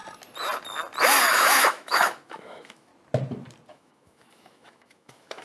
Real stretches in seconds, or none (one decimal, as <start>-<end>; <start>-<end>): 0.0-1.2; 2.9-3.7